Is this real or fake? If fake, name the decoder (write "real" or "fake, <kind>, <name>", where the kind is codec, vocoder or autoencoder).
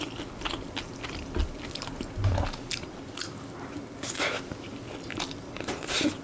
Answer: real